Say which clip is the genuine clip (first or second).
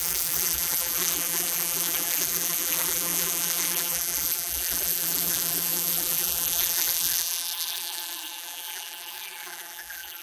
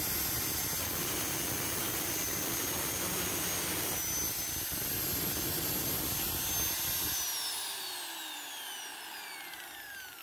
second